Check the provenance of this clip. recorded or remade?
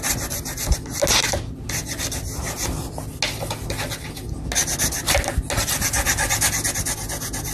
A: recorded